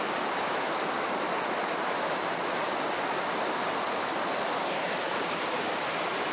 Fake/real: real